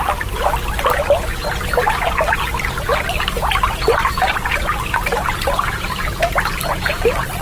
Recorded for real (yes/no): yes